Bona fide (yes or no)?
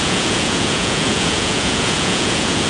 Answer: no